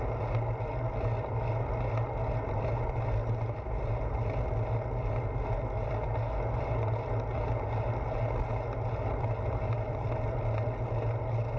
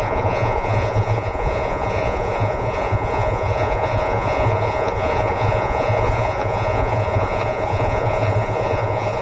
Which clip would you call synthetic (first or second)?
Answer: second